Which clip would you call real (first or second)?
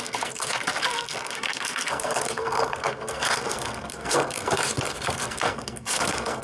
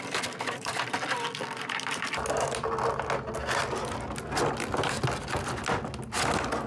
second